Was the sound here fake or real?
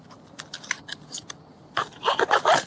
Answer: real